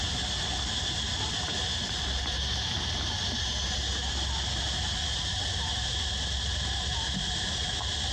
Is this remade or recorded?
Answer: remade